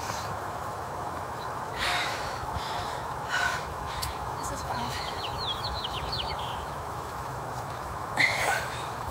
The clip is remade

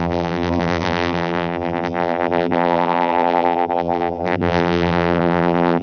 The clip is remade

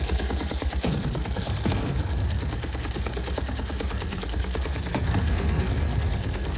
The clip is remade